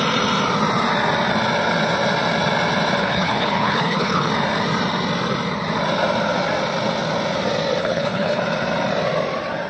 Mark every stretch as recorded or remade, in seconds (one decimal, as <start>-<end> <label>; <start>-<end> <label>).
0.0-3.0 recorded; 3.0-4.3 remade; 4.3-7.8 recorded; 7.8-8.4 remade; 8.4-9.7 recorded